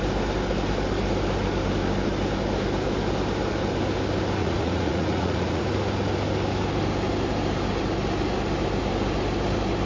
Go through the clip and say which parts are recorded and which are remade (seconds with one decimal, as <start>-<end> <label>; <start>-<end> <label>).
0.0-4.4 recorded; 4.4-5.6 remade; 5.6-9.9 recorded